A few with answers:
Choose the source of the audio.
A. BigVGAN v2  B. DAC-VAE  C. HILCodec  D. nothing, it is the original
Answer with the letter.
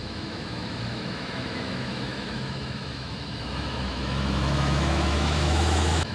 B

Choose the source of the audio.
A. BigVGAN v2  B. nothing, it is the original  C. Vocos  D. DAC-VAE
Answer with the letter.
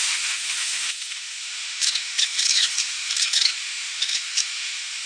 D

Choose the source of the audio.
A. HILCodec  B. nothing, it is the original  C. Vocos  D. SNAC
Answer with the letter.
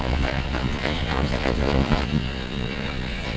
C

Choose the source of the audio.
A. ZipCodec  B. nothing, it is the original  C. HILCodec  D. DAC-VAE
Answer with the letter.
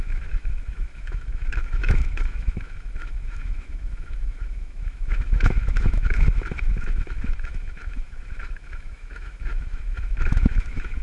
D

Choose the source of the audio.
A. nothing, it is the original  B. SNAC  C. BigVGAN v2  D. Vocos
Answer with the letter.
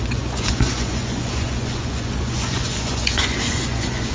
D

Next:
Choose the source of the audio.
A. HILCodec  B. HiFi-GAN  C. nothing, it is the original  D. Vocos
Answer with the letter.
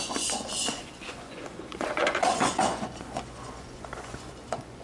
D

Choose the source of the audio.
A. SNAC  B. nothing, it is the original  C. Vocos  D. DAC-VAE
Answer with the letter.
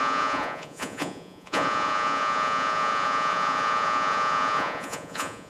C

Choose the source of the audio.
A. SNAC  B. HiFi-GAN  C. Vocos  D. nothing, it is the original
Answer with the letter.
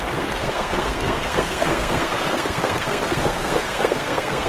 A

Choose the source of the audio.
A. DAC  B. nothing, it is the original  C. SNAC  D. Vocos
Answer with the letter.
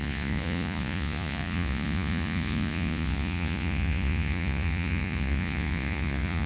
D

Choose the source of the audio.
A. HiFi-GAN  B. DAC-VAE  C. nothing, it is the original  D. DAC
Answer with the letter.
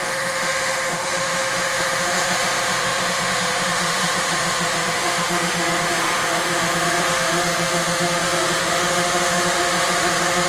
B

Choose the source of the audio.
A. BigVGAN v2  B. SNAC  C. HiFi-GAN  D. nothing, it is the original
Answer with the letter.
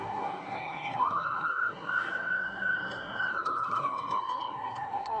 B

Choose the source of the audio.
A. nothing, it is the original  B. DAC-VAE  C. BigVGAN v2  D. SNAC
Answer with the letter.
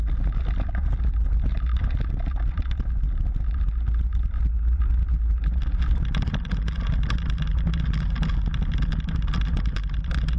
A